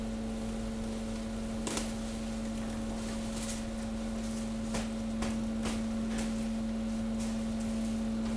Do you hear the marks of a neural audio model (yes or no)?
no